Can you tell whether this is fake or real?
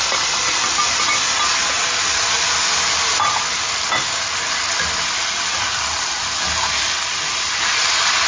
real